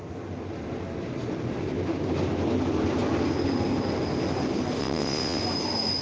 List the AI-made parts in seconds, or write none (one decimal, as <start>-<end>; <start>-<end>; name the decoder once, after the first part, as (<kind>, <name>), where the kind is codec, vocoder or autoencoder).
4.8-5.4 (vocoder, WaveNeXt)